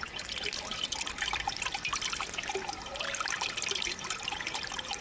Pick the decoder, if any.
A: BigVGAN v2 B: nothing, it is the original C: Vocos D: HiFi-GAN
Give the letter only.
B